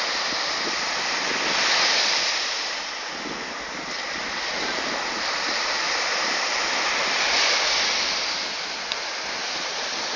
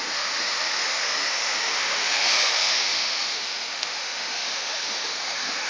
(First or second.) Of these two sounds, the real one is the first